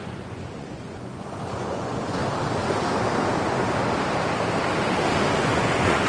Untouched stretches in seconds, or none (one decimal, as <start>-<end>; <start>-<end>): 2.2-5.3